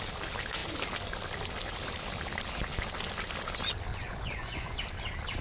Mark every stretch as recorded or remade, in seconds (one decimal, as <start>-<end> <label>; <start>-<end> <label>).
0.0-3.9 recorded; 3.9-4.8 remade; 4.8-5.4 recorded